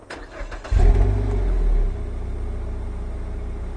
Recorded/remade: recorded